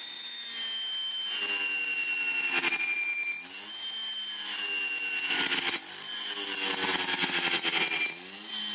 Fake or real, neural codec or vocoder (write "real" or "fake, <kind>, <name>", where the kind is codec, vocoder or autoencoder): real